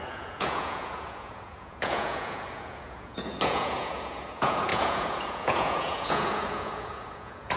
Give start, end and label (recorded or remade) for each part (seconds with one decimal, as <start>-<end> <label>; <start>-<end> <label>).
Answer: 0.0-7.6 remade